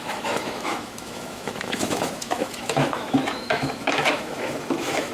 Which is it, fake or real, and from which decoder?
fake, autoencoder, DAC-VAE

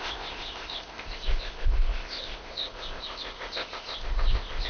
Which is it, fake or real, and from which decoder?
fake, codec, ZipCodec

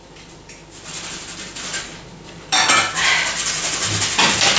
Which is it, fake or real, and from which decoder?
real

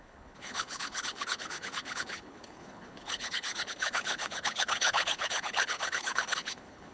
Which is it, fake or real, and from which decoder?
fake, codec, HILCodec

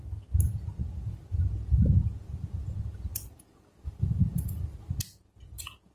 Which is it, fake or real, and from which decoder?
real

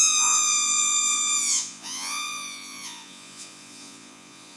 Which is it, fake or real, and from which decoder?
fake, vocoder, Vocos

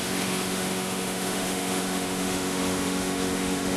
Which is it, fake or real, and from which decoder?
fake, autoencoder, DAC-VAE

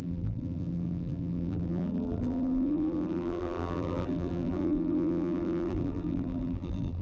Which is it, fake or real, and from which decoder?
fake, vocoder, BigVGAN v2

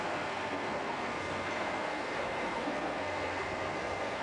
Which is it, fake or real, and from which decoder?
fake, codec, SNAC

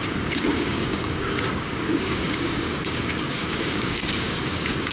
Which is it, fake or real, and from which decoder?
fake, codec, DAC